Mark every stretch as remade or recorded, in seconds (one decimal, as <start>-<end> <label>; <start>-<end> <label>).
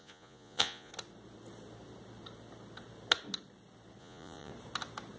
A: 0.0-0.9 remade; 0.9-4.0 recorded; 4.0-4.5 remade; 4.5-5.2 recorded